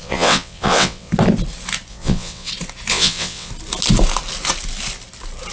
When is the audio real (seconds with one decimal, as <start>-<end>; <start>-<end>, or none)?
1.1-1.9; 2.5-2.9; 3.5-5.5